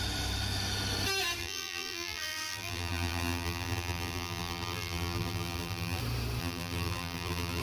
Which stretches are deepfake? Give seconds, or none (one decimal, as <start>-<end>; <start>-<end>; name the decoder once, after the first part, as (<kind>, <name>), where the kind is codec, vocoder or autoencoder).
1.4-6.0 (vocoder, BigVGAN v2); 6.4-7.6